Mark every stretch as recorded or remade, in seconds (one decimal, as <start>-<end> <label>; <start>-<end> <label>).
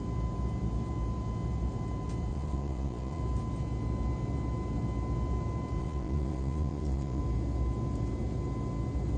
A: 0.0-2.3 recorded; 2.3-3.2 remade; 3.2-5.8 recorded; 5.8-7.2 remade; 7.2-9.2 recorded